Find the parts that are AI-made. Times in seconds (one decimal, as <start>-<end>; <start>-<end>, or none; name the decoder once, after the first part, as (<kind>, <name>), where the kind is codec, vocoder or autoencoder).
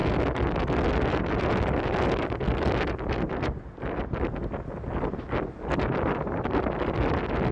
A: none